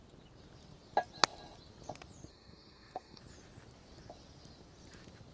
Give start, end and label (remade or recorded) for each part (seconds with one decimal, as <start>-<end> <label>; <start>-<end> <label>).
0.0-2.3 recorded; 2.3-3.2 remade; 3.2-5.3 recorded